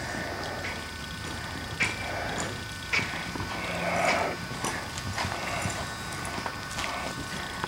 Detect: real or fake real